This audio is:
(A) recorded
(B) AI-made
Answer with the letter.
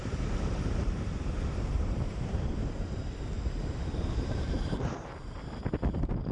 B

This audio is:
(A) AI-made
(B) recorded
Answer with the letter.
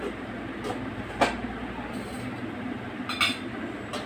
B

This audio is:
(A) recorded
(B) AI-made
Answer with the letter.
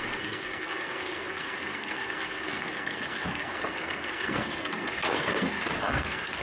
B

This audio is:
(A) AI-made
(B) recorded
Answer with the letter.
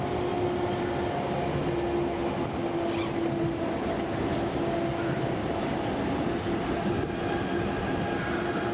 B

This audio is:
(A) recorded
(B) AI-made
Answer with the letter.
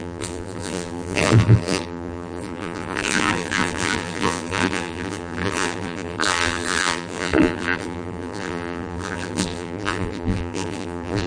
B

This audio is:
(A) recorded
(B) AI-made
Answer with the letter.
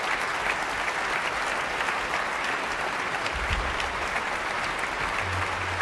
A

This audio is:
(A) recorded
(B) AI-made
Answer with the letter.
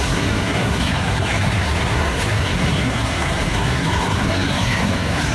B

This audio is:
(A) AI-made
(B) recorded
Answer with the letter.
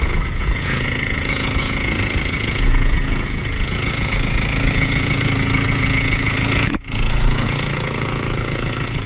A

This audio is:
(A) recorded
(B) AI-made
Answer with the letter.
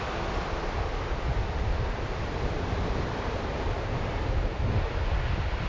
A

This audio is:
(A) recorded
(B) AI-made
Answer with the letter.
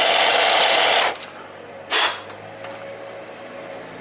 A